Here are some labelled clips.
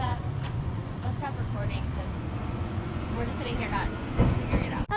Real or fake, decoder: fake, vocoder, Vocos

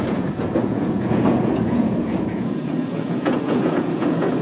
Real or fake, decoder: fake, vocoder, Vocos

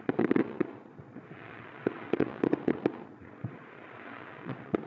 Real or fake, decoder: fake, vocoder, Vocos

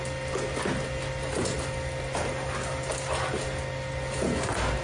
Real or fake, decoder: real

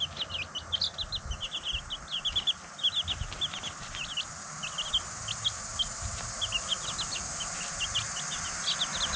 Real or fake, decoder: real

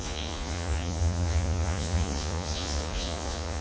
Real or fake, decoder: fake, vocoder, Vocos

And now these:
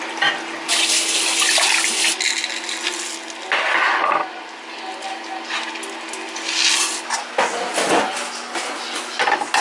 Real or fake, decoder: real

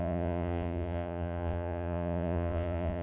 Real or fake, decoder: fake, vocoder, Vocos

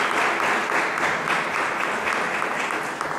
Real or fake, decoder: real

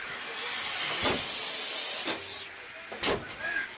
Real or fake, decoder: real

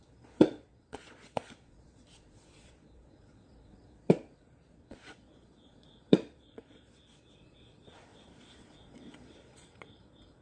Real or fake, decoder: fake, vocoder, Vocos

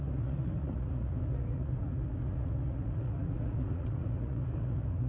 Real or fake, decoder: fake, vocoder, Vocos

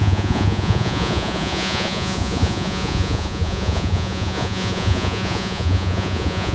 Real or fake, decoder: fake, vocoder, Vocos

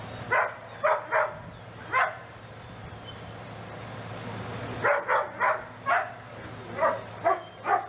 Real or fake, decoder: real